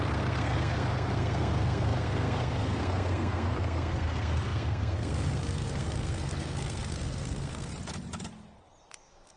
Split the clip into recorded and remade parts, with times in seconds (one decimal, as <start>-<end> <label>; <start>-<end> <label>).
0.0-7.7 remade; 7.7-9.0 recorded; 9.0-9.4 remade